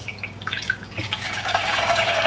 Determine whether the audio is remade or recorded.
remade